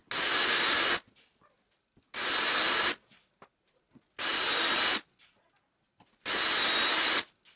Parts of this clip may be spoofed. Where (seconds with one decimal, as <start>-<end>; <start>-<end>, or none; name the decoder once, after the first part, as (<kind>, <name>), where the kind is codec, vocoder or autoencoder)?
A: none